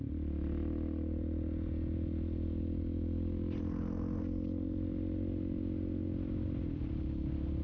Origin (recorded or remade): recorded